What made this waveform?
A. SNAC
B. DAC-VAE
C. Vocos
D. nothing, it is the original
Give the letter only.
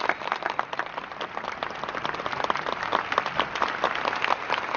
D